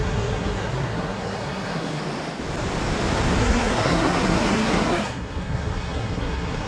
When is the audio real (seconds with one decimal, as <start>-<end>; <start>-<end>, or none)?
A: 2.0-3.4